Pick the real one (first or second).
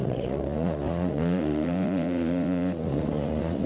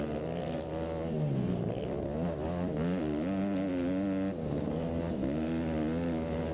second